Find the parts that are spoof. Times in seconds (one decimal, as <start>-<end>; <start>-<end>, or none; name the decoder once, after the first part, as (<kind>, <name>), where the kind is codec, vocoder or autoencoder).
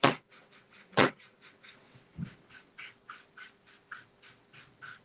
0.0-2.1 (vocoder, WaveNeXt)